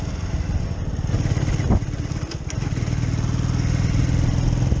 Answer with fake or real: real